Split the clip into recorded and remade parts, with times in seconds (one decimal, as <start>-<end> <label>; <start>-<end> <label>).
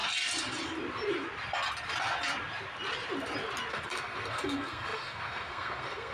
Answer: 0.0-3.7 recorded; 3.7-6.1 remade